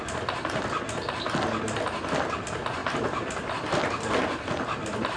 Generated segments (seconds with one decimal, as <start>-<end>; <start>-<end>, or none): 2.8-3.5